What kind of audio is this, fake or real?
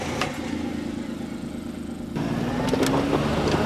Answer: real